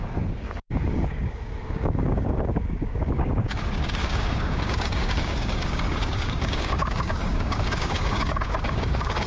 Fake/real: fake